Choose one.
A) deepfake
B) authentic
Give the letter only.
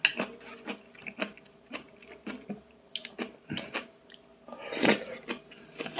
B